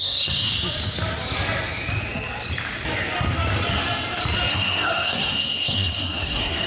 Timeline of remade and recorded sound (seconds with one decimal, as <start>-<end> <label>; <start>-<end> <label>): 0.0-0.5 remade; 0.5-4.5 recorded; 4.5-6.7 remade